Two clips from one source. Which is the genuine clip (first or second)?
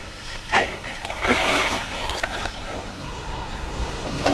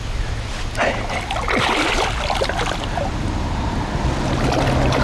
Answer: second